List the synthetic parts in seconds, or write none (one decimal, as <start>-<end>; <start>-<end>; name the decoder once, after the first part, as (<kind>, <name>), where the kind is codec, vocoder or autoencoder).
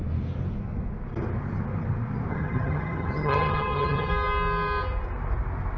2.3-4.1 (vocoder, HiFi-GAN)